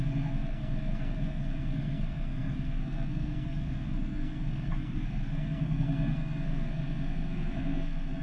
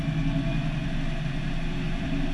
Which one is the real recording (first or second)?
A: second